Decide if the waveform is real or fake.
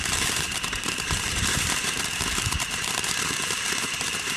fake